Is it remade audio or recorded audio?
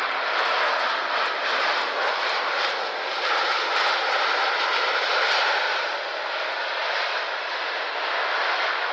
recorded